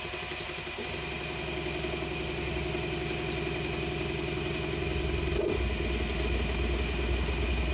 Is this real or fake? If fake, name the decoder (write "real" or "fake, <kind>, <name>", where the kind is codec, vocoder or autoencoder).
real